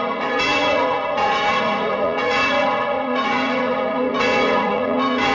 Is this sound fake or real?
fake